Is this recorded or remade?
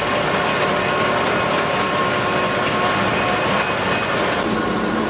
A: recorded